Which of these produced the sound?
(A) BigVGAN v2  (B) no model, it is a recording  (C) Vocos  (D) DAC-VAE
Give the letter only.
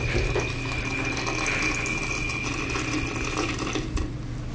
B